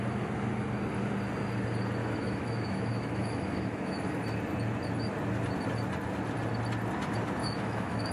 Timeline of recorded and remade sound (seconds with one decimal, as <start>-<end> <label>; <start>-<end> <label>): 0.0-2.0 recorded; 2.0-4.2 remade; 4.2-7.4 recorded; 7.4-8.1 remade